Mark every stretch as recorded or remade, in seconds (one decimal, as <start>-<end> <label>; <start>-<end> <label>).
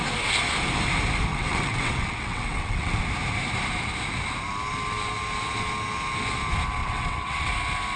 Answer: 0.0-1.3 recorded; 1.3-3.0 remade; 3.0-6.8 recorded; 6.8-7.5 remade; 7.5-8.0 recorded